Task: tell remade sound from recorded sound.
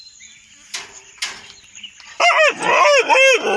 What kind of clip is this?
recorded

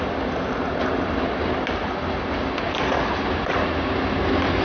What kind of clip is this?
recorded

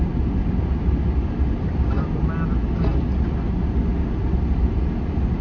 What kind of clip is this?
recorded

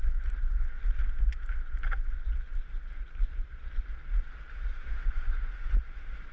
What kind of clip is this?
recorded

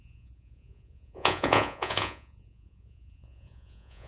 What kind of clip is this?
remade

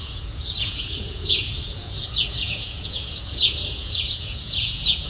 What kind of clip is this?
remade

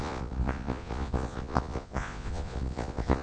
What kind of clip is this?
remade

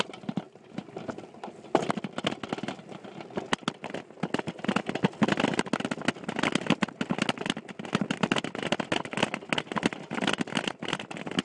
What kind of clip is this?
recorded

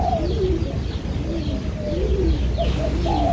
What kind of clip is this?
recorded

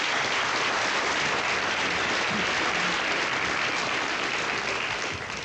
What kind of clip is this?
recorded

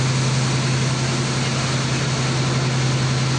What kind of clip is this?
recorded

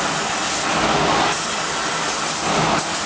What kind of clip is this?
recorded